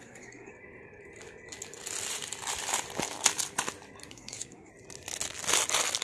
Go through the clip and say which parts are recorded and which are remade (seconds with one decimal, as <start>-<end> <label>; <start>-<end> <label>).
0.0-0.5 remade; 0.5-4.1 recorded; 4.1-4.7 remade; 4.7-6.0 recorded